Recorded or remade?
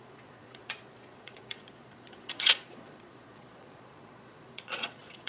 remade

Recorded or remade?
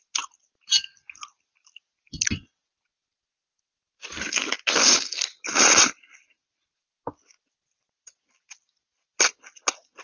recorded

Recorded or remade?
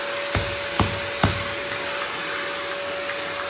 recorded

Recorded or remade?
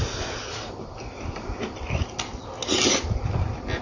recorded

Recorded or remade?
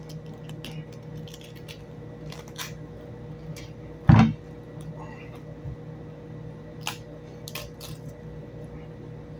recorded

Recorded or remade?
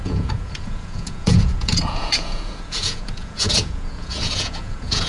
remade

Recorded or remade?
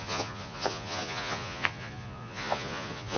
remade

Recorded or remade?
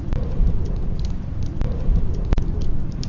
recorded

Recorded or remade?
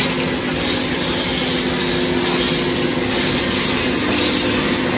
recorded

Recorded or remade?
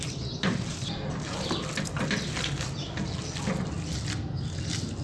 recorded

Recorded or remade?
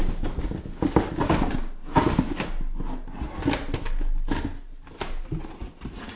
recorded